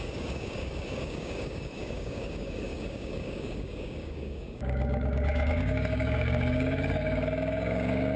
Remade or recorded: remade